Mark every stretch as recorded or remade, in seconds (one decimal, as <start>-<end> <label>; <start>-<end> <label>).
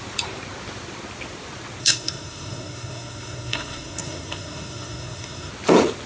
0.0-1.8 recorded; 1.8-5.5 remade; 5.5-6.1 recorded